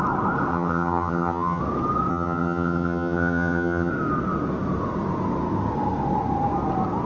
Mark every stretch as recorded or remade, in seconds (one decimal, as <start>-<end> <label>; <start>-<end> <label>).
0.0-0.5 recorded; 0.5-1.6 remade; 1.6-2.1 recorded; 2.1-3.9 remade; 3.9-7.1 recorded